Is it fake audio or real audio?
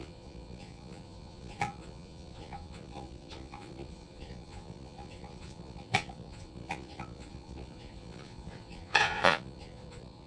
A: fake